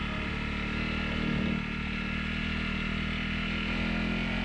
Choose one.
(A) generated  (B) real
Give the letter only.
B